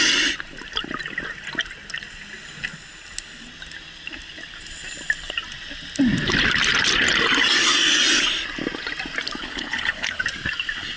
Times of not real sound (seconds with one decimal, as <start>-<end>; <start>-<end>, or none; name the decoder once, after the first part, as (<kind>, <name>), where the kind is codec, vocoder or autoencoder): 9.4-10.2 (codec, HILCodec)